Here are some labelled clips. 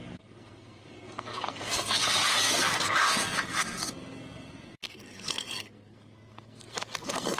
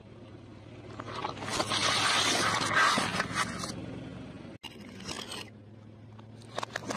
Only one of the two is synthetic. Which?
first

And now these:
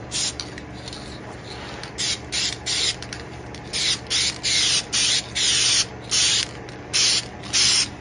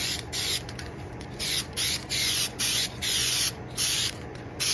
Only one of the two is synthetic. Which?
second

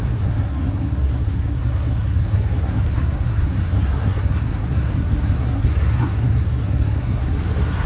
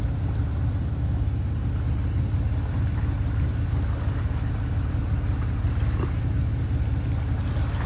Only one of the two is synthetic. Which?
first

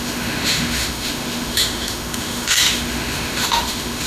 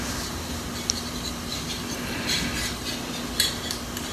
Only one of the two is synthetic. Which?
first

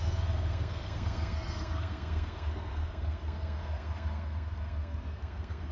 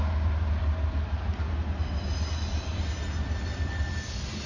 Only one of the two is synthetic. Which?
first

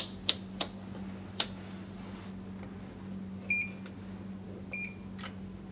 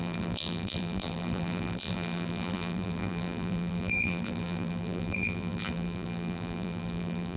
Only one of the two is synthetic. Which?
second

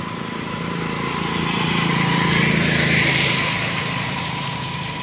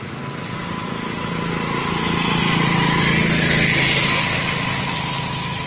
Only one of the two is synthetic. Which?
first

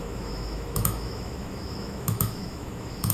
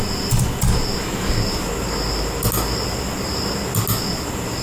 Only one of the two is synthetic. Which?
first